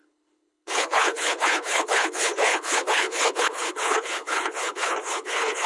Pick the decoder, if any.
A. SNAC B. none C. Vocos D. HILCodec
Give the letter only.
D